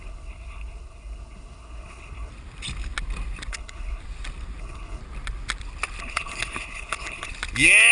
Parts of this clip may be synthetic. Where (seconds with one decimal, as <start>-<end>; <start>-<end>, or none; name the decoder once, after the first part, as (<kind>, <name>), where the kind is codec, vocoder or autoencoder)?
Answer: 0.0-2.3 (codec, HILCodec); 3.5-4.0; 4.6-5.0; 6.0-7.3